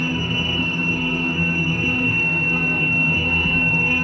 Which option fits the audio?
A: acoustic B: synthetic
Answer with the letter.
B